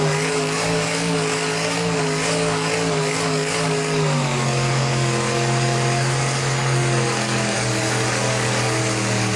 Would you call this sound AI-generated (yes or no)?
yes